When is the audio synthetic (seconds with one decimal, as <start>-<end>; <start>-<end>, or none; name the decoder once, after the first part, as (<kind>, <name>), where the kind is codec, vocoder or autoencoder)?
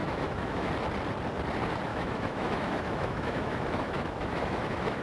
0.0-0.7 (autoencoder, DAC-VAE); 1.9-5.0